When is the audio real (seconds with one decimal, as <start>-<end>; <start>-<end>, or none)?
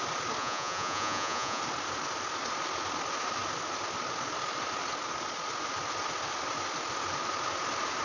0.0-0.4; 1.6-8.0